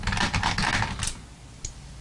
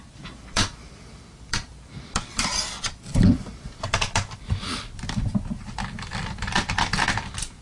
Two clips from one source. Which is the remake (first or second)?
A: second